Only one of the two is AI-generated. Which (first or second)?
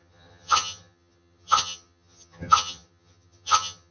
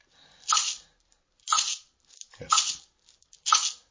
first